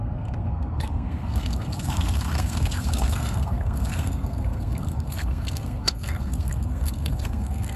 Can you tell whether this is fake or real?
fake